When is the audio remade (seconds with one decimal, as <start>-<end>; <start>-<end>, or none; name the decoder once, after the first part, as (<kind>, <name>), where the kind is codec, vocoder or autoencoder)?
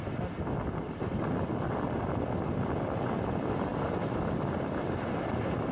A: none